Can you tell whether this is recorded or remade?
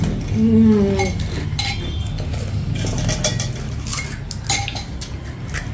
recorded